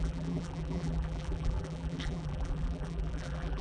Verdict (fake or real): fake